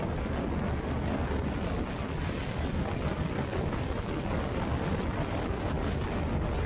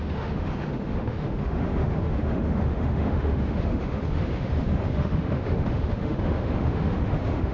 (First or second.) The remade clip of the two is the second